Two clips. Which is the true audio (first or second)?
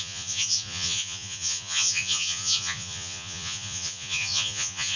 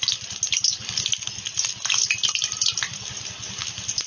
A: second